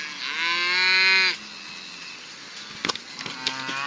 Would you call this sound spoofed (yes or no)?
no